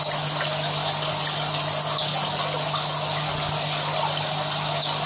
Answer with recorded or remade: recorded